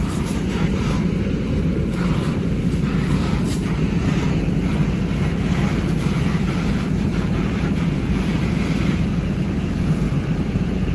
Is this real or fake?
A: fake